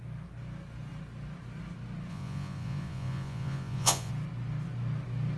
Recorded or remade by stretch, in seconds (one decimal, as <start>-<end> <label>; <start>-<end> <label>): 0.0-2.1 recorded; 2.1-4.1 remade; 4.1-5.4 recorded